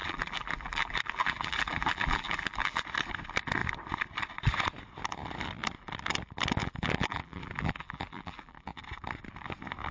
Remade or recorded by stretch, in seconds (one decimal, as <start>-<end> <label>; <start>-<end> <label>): 0.0-2.8 remade; 2.8-6.6 recorded; 6.6-8.8 remade; 8.8-9.9 recorded